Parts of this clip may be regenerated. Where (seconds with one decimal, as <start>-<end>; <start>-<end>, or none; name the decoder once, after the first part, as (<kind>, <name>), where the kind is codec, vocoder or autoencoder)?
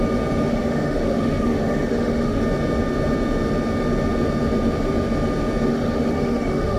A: 0.5-2.4 (autoencoder, DAC-VAE); 5.7-6.8